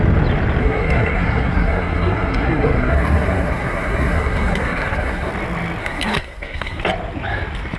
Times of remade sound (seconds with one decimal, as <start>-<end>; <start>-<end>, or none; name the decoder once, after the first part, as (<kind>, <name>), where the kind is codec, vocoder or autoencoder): 0.6-5.3 (codec, SNAC); 5.8-6.8